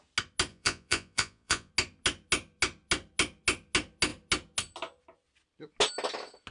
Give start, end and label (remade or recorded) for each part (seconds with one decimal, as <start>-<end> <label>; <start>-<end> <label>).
0.0-0.5 recorded; 0.5-1.7 remade; 1.7-6.5 recorded